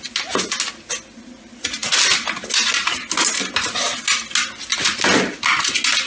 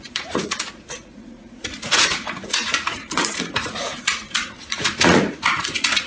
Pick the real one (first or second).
first